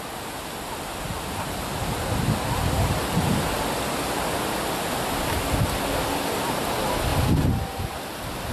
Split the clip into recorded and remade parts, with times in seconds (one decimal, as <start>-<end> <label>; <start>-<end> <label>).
0.0-8.5 recorded